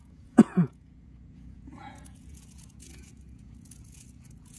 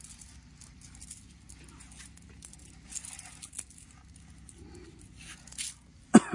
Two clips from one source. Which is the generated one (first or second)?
first